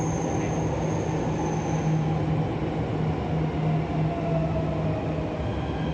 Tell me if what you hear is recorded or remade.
recorded